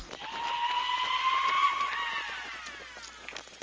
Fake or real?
real